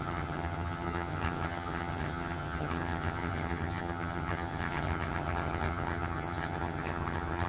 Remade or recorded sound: remade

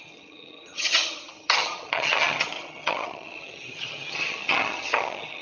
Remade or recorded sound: remade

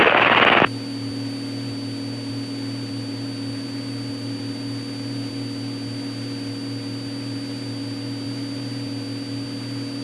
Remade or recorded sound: recorded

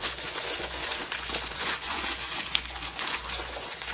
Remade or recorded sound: remade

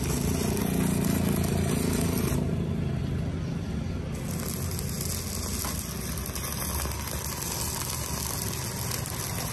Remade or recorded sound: recorded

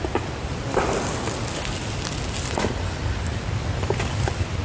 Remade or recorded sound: recorded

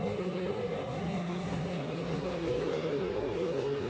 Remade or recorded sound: remade